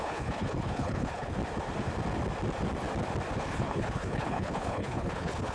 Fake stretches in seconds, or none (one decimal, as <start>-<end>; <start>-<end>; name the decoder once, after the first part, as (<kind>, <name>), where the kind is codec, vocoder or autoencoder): 0.0-1.4 (codec, HILCodec); 3.4-5.5